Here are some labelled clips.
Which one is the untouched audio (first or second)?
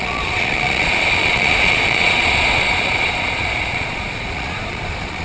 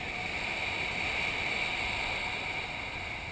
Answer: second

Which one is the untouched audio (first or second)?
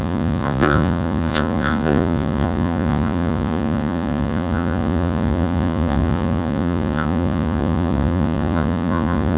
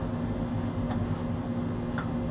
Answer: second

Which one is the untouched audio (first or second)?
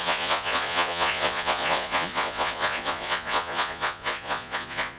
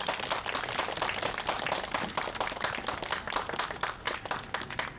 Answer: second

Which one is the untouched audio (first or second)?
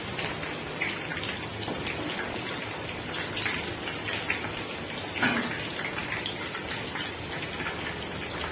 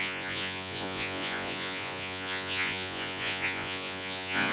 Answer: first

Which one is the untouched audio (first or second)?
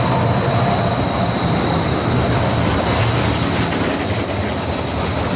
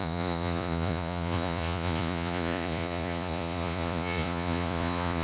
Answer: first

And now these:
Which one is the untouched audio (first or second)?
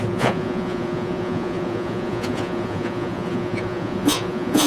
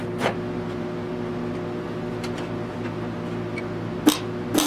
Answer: second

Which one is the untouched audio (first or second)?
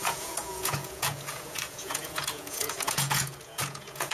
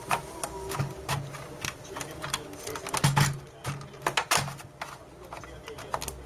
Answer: second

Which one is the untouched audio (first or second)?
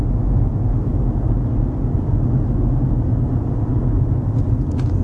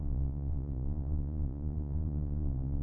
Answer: first